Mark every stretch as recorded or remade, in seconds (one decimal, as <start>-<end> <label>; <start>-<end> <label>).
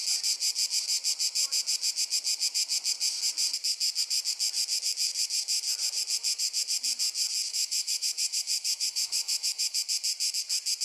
0.0-7.5 recorded; 7.5-9.8 remade; 9.8-10.8 recorded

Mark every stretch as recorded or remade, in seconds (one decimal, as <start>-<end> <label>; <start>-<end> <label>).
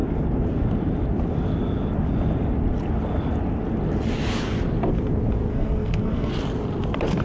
0.0-5.5 recorded; 5.5-6.3 remade; 6.3-7.2 recorded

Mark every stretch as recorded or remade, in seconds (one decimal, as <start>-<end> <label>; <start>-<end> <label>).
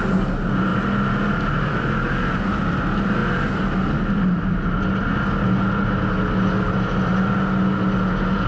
0.0-8.5 recorded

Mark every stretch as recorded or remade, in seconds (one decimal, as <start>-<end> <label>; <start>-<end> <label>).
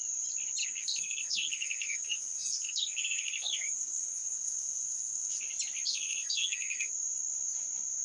0.0-0.6 recorded; 0.6-5.4 remade; 5.4-5.9 recorded; 5.9-6.9 remade; 6.9-8.0 recorded